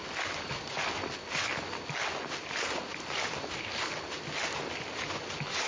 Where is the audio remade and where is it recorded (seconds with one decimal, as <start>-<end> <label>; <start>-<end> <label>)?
0.0-5.7 recorded